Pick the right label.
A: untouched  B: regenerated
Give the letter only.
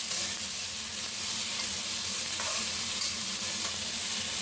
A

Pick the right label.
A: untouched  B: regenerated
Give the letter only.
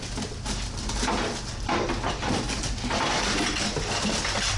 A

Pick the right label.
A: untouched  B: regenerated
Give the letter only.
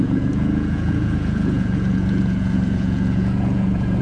B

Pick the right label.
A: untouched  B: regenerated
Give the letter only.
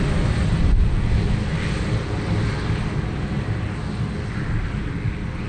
A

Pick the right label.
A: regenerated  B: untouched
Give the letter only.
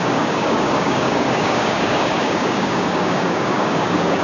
A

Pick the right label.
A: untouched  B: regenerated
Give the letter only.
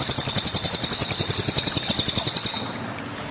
A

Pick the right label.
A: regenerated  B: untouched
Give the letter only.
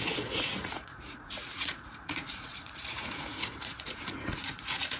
A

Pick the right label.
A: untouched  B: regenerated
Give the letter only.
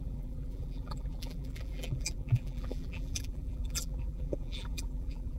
B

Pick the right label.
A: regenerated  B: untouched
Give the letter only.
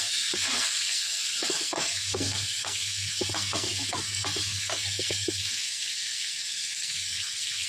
A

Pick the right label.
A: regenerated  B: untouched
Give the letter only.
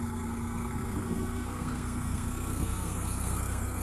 A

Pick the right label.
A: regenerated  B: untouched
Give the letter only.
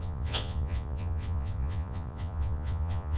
A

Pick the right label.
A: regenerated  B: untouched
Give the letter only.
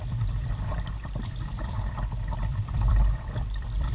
A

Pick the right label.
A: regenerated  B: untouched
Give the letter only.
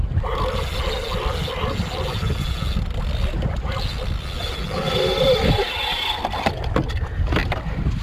B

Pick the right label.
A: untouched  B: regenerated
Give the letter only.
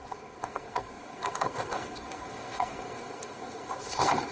B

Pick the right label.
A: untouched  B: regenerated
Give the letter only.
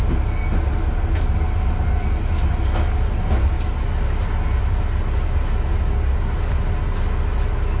A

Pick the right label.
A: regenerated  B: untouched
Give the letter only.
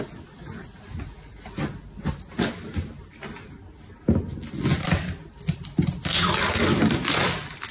B